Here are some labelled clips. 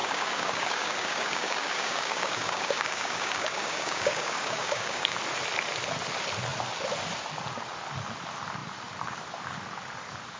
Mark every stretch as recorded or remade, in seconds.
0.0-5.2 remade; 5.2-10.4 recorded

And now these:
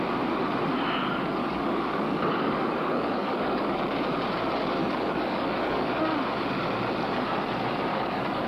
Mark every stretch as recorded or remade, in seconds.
0.0-1.4 recorded; 1.4-3.8 remade; 3.8-4.8 recorded; 4.8-6.0 remade; 6.0-7.9 recorded; 7.9-8.5 remade

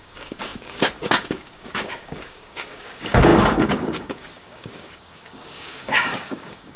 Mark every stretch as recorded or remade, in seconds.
0.0-6.8 remade

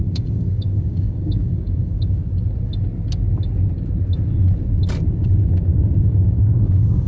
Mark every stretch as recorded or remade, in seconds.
0.0-2.2 remade; 2.2-5.1 recorded; 5.1-7.1 remade

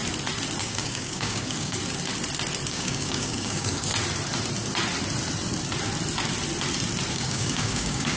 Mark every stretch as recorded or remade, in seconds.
0.0-0.6 recorded; 0.6-1.8 remade; 1.8-2.7 recorded; 2.7-3.9 remade; 3.9-7.1 recorded; 7.1-8.2 remade